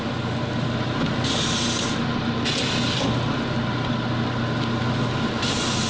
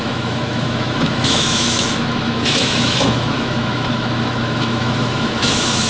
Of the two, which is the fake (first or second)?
second